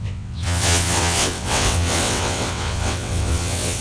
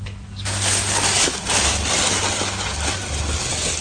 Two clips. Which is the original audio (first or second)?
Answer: second